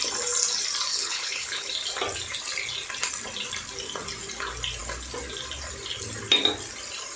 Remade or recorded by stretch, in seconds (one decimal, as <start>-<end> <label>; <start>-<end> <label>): 0.0-0.9 recorded; 0.9-1.7 remade; 1.7-7.2 recorded